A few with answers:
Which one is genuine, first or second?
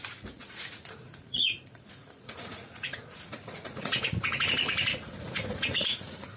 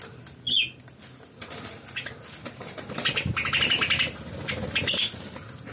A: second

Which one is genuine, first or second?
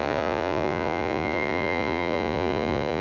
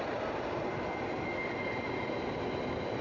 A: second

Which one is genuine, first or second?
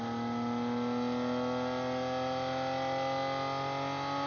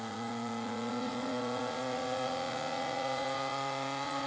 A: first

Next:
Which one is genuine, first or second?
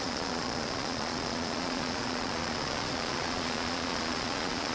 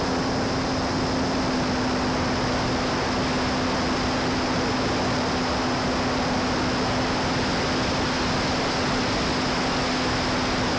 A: second